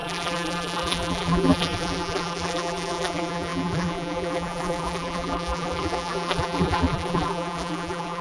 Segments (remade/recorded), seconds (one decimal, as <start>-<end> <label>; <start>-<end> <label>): 0.0-8.2 remade